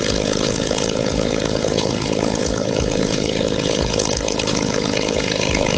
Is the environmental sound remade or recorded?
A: remade